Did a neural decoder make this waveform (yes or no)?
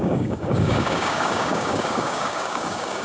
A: yes